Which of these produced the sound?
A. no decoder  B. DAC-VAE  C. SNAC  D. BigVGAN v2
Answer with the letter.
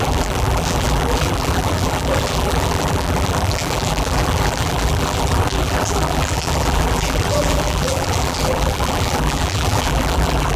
D